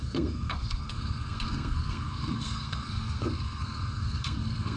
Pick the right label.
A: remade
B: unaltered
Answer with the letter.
A